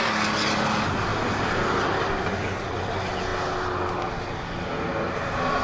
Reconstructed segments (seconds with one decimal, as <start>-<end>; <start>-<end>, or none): none

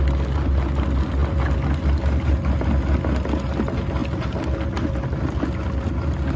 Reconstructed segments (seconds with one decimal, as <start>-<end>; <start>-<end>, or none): none

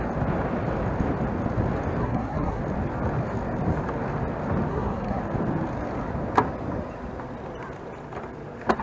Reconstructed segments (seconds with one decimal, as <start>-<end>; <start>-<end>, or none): 2.0-2.6; 4.7-5.2

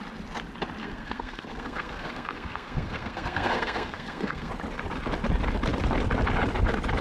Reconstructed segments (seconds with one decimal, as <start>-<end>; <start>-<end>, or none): 0.8-4.5

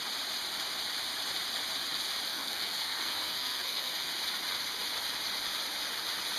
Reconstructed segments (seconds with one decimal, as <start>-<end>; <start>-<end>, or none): 2.3-4.1